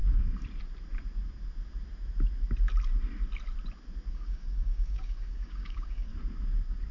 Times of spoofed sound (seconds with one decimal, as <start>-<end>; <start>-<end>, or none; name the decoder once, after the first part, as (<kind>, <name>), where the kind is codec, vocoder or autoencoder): 4.1-6.1 (codec, DAC)